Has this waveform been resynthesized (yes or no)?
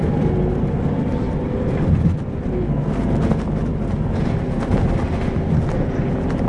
no